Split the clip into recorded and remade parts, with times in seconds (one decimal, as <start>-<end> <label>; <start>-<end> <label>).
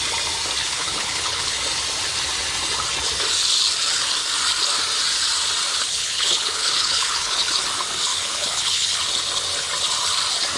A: 0.0-0.6 recorded; 0.6-1.5 remade; 1.5-5.7 recorded; 5.7-7.5 remade; 7.5-8.1 recorded; 8.1-9.0 remade; 9.0-10.6 recorded